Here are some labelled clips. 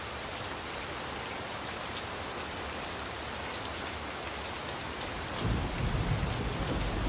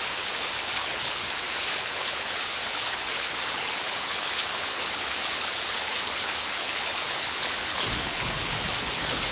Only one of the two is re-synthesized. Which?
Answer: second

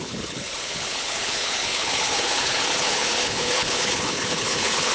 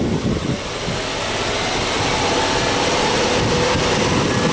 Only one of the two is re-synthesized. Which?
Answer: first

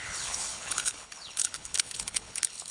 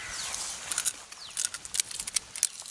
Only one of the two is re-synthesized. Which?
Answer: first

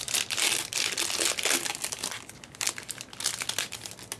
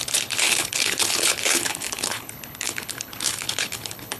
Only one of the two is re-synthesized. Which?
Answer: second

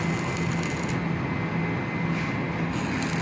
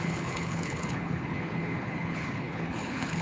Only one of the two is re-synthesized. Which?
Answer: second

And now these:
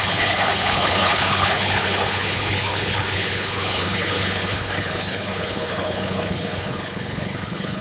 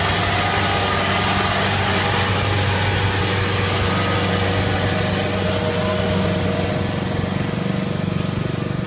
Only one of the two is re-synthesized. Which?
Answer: first